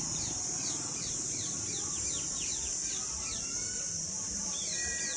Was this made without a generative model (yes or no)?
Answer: no